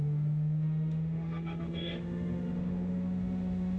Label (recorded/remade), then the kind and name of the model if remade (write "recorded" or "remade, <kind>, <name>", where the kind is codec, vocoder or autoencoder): remade, autoencoder, DAC-VAE